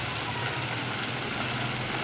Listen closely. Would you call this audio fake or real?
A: real